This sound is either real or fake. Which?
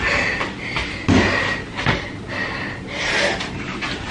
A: real